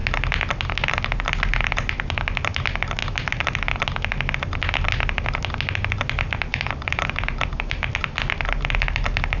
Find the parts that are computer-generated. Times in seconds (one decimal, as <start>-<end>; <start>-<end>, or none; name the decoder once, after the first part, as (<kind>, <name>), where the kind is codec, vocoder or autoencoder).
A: 6.5-7.9 (vocoder, BigVGAN v2)